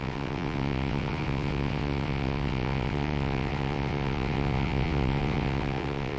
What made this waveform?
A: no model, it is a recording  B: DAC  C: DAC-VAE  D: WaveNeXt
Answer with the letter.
D